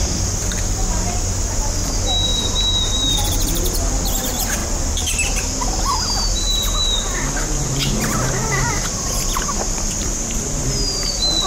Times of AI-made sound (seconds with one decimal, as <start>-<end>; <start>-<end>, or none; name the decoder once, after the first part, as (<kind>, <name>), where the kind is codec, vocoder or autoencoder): none